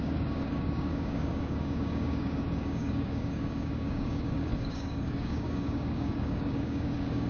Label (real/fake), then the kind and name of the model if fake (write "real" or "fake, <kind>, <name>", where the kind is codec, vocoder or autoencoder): fake, codec, DAC